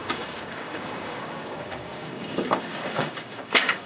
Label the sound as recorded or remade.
remade